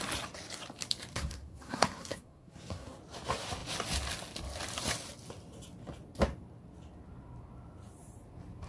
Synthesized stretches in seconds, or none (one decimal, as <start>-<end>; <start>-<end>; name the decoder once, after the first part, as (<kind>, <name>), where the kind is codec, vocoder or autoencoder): 1.1-3.0 (codec, SNAC)